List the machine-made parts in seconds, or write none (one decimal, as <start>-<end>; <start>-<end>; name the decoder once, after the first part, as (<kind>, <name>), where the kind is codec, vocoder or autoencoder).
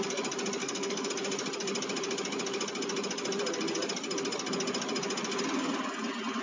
0.6-1.1 (codec, SNAC)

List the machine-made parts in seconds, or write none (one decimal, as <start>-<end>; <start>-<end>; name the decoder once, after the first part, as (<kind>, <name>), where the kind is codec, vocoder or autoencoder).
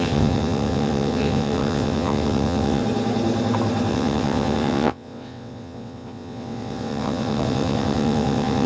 0.0-2.8 (vocoder, WaveNeXt); 3.9-8.7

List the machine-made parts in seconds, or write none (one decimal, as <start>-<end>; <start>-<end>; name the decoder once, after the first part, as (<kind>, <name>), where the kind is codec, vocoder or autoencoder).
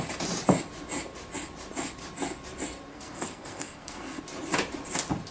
2.9-4.2 (codec, SNAC)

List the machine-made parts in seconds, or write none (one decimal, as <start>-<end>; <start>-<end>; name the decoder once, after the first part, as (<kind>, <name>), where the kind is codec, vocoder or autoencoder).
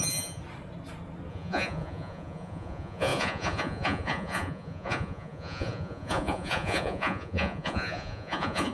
0.0-0.4 (vocoder, Vocos); 1.3-8.7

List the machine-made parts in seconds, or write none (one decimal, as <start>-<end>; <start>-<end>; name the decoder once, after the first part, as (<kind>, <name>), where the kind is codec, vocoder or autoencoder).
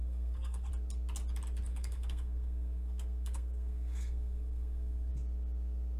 0.0-0.7 (codec, SNAC); 1.7-5.1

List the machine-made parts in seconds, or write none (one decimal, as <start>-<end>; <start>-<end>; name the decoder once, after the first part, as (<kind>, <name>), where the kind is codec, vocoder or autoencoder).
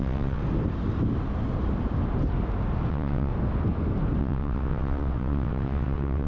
0.0-0.4 (vocoder, WaveNeXt); 2.9-3.3; 4.2-6.3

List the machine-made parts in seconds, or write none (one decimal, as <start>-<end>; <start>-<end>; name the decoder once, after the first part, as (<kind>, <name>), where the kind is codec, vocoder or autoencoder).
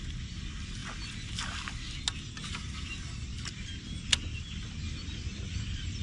5.0-5.6 (vocoder, BigVGAN v2)